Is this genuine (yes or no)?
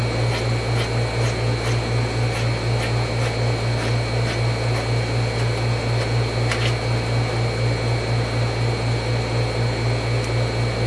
yes